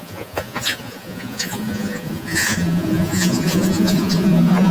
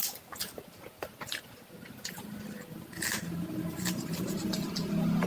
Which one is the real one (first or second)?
second